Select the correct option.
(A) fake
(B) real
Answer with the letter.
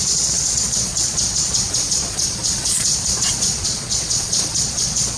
A